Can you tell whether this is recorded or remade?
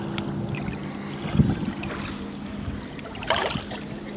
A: recorded